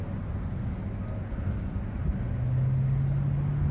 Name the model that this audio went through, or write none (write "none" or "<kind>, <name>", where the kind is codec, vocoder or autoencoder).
none